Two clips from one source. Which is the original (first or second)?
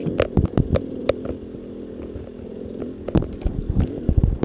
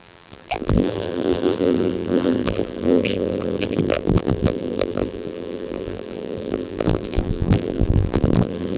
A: first